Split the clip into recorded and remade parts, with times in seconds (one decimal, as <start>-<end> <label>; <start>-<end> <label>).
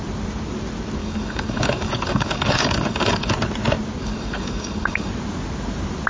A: 0.0-1.0 recorded; 1.0-3.3 remade; 3.3-4.0 recorded; 4.0-5.1 remade; 5.1-6.1 recorded